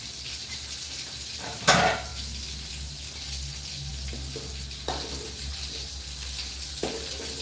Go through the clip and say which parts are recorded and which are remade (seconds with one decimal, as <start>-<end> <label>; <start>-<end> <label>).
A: 0.0-0.4 recorded; 0.4-1.7 remade; 1.7-7.4 recorded